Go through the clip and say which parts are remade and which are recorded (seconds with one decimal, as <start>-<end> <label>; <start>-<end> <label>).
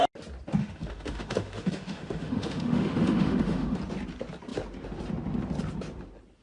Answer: 0.0-0.6 recorded; 0.6-3.8 remade; 3.8-6.4 recorded